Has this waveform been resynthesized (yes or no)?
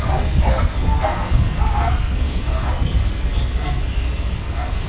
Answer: yes